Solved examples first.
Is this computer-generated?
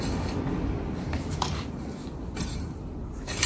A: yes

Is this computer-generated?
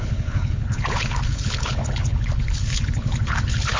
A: yes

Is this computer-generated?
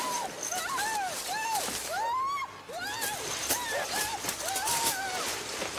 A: no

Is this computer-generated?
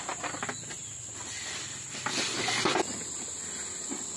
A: no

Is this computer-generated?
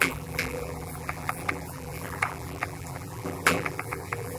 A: yes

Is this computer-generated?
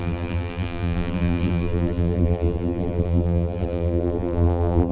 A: yes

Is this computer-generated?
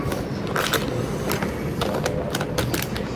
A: no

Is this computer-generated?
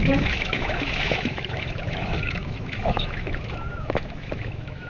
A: yes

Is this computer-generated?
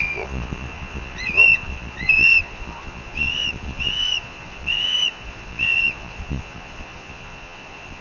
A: yes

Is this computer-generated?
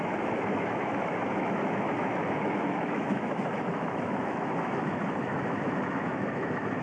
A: yes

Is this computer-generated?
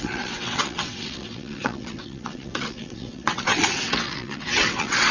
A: yes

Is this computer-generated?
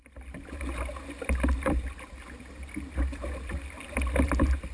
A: no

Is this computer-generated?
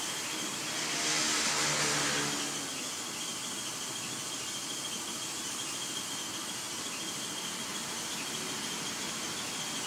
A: no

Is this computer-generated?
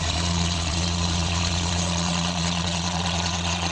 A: yes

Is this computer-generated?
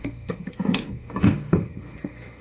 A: yes